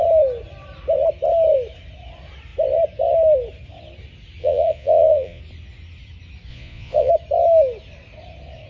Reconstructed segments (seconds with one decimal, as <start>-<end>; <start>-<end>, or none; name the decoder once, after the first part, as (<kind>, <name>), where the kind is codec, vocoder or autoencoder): 4.4-5.4 (vocoder, Vocos); 6.5-7.1